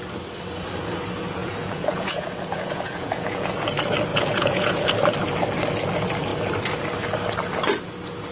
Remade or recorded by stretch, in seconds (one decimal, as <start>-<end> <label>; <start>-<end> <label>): 0.0-1.4 recorded; 1.4-3.5 remade; 3.5-4.1 recorded; 4.1-4.9 remade; 4.9-8.3 recorded